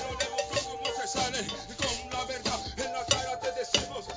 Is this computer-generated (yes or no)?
no